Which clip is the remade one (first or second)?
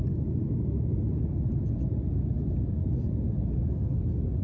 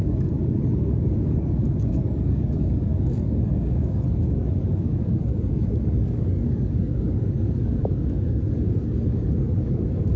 second